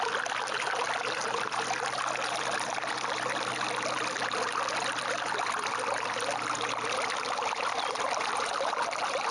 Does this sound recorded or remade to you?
recorded